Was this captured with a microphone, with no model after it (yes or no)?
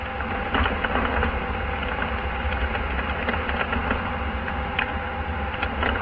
yes